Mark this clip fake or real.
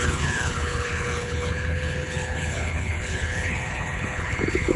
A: fake